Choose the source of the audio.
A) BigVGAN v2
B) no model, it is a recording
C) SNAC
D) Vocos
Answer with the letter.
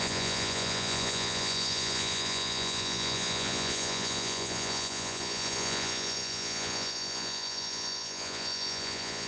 D